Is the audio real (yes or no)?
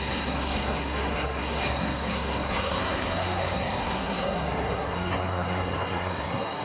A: no